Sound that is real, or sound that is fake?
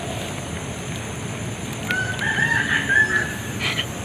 real